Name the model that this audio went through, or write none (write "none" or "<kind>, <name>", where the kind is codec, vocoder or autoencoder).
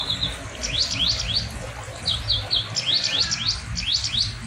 none